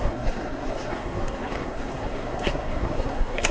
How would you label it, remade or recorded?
remade